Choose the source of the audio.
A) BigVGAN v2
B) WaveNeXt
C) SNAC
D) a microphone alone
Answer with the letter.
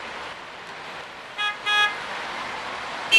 D